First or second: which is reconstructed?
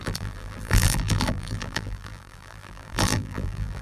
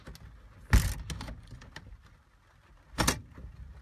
first